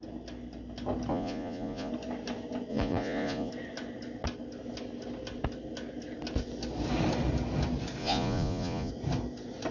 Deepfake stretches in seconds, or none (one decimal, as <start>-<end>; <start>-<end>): 1.1-1.9; 2.7-3.5; 8.0-8.9